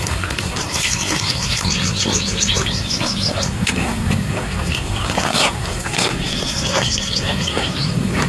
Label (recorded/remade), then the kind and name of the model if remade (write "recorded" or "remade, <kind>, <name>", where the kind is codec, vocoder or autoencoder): remade, codec, SNAC